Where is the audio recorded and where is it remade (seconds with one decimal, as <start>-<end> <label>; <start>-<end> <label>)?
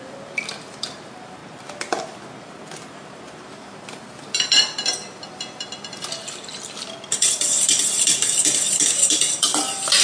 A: 0.0-1.4 remade; 1.4-3.4 recorded; 3.4-10.0 remade